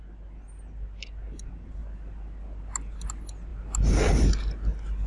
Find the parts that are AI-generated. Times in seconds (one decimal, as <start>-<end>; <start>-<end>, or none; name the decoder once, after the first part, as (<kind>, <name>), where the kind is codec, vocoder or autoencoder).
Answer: none